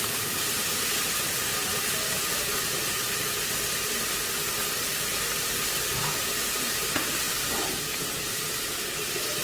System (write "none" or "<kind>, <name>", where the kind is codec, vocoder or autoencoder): none